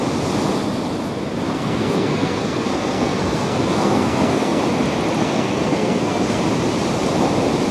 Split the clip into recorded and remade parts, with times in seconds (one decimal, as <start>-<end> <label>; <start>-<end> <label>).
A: 0.0-1.5 recorded; 1.5-4.6 remade; 4.6-5.2 recorded; 5.2-6.4 remade; 6.4-7.7 recorded